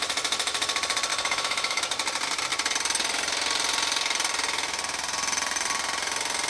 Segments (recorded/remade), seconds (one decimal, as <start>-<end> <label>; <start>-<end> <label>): 0.0-1.1 recorded; 1.1-1.8 remade; 1.8-6.5 recorded